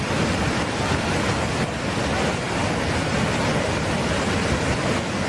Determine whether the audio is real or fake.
real